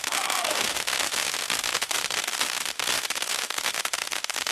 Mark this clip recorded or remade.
remade